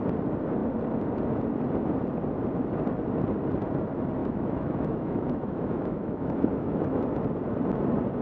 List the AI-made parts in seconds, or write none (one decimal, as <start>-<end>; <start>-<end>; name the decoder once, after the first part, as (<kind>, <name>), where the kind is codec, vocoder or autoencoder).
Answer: 4.2-7.0 (autoencoder, DAC-VAE)